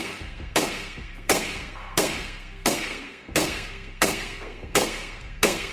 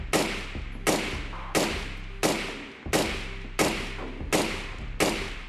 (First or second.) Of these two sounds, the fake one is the first